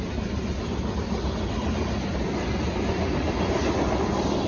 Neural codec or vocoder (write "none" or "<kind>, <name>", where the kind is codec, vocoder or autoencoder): none